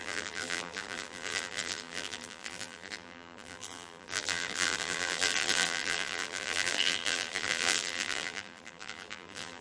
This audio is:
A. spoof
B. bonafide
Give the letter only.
A